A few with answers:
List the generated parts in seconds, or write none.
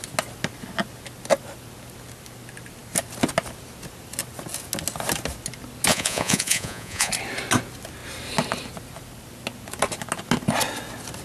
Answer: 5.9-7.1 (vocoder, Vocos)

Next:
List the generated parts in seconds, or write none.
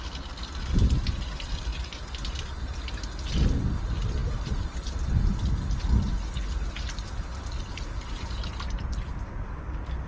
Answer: none